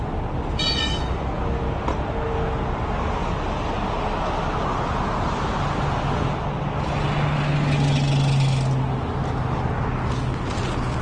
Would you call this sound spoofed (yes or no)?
no